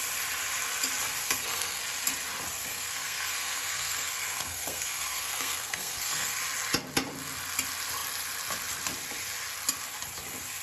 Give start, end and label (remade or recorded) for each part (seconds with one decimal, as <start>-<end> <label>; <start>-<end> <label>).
0.0-1.2 recorded; 1.2-1.8 remade; 1.8-2.7 recorded; 2.7-6.4 remade; 6.4-10.6 recorded